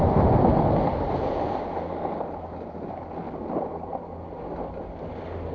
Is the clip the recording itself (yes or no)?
yes